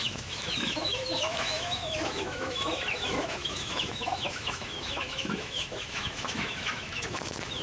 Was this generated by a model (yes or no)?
yes